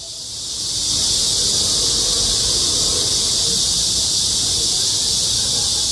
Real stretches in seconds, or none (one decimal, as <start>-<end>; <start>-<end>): 0.0-5.9